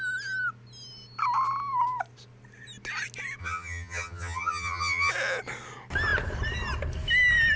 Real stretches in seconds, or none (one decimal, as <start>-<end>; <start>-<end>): 0.0-3.4; 5.1-7.6